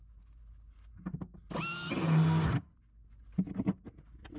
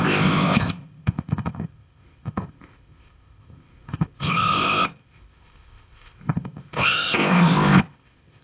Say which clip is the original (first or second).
first